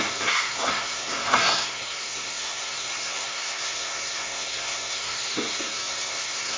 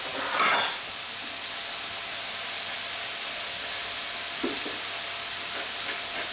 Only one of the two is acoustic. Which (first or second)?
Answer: second